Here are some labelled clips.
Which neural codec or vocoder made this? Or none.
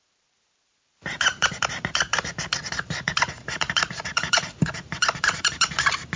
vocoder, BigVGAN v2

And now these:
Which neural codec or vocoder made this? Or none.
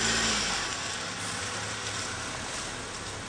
none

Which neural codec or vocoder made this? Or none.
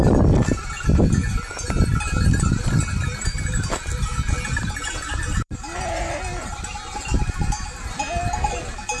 vocoder, BigVGAN v2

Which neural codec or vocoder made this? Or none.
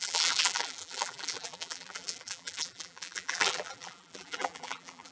vocoder, BigVGAN v2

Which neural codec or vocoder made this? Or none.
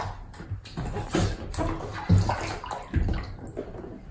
none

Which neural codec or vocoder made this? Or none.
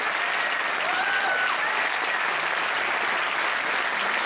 none